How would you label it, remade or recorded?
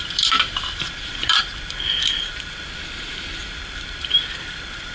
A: remade